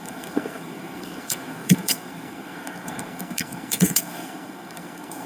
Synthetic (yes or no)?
yes